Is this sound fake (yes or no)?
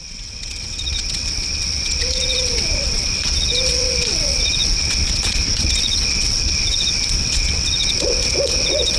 yes